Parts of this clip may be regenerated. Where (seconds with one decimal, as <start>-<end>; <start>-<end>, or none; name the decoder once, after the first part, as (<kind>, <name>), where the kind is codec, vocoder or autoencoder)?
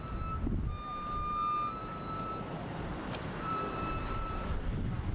1.8-5.1 (vocoder, BigVGAN v2)